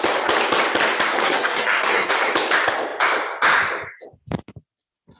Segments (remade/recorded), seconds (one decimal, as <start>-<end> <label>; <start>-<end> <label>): 0.0-1.2 recorded; 1.2-2.1 remade; 2.1-5.2 recorded